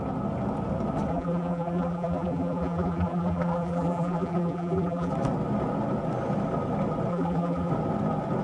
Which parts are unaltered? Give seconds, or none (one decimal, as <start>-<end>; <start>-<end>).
0.0-1.1; 5.1-7.1; 7.7-8.4